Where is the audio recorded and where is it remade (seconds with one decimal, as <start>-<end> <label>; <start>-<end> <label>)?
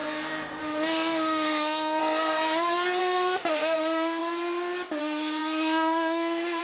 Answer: 0.0-0.6 recorded; 0.6-2.0 remade; 2.0-3.0 recorded; 3.0-4.2 remade; 4.2-5.0 recorded; 5.0-6.6 remade